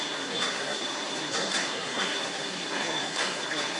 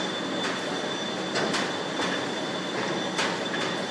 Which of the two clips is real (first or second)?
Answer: second